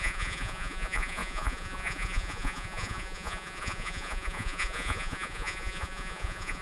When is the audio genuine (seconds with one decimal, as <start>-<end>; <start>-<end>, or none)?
none

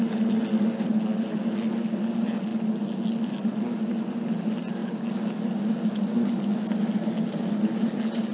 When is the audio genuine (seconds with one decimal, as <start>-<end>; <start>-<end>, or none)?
0.0-8.3

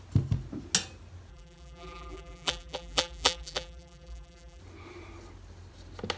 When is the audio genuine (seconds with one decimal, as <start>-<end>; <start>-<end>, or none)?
0.0-1.3; 4.6-6.2

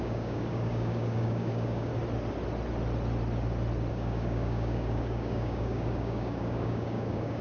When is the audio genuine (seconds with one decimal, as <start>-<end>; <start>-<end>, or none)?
1.9-3.9

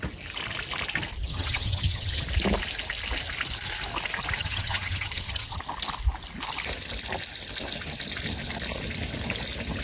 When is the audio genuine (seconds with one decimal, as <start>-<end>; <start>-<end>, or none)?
0.0-1.3; 2.2-4.4; 5.6-9.8

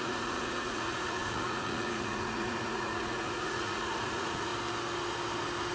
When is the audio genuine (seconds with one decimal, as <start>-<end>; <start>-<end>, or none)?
4.5-5.7